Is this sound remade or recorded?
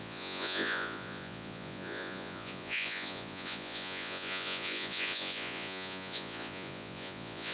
remade